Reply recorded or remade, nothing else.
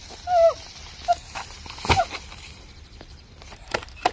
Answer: recorded